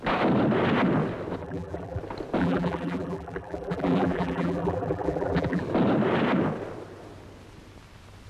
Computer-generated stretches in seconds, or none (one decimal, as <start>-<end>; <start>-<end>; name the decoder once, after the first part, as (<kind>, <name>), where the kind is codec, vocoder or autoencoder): 1.4-2.0 (vocoder, BigVGAN v2); 2.4-5.6

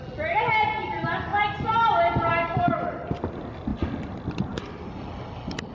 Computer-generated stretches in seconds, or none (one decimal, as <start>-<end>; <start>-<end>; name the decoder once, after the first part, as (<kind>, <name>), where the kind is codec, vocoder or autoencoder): none

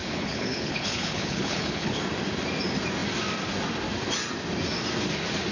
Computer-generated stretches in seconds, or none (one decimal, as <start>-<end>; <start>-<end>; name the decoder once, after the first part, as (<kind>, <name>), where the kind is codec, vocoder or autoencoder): 0.0-2.0 (codec, HILCodec)

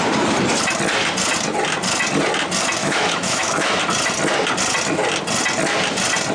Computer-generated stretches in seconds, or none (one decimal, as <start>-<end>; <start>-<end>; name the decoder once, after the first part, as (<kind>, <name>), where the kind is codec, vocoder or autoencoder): 2.8-3.8 (autoencoder, DAC-VAE)

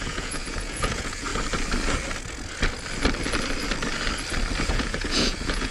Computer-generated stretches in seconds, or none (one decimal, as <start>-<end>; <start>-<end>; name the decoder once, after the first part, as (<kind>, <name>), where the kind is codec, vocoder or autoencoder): 0.0-1.3 (vocoder, Vocos); 4.7-5.7

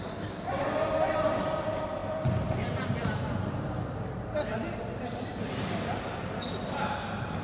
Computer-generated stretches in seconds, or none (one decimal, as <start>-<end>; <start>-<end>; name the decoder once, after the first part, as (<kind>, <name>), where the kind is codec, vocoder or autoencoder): 0.0-7.4 (vocoder, BigVGAN v2)

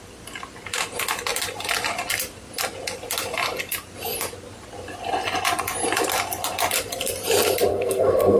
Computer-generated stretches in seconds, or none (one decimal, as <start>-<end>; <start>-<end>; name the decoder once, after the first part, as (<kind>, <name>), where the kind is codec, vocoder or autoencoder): 7.7-8.4 (codec, SNAC)